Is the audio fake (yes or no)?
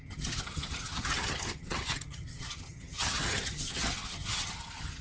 yes